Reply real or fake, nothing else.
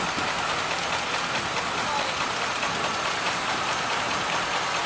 real